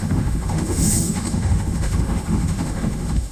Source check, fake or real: fake